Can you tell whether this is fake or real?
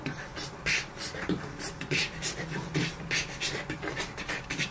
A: fake